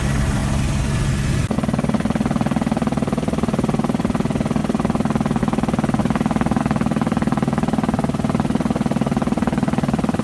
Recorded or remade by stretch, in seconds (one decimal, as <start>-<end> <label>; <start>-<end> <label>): 0.0-6.0 recorded; 6.0-6.6 remade; 6.6-10.2 recorded